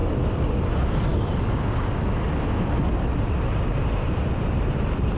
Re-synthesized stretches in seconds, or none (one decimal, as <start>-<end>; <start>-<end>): none